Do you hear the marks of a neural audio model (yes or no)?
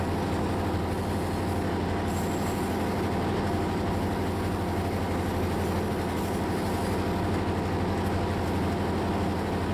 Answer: no